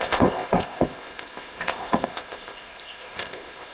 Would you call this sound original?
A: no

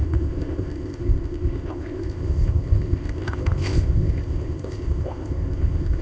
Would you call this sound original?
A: no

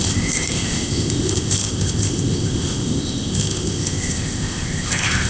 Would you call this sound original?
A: no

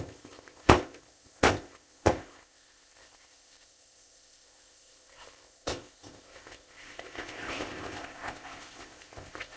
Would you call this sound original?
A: no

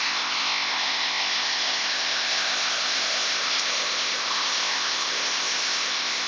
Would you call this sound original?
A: no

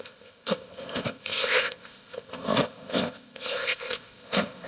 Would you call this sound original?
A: no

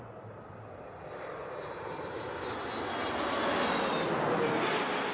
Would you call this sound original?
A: yes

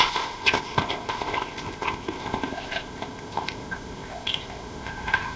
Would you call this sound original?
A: no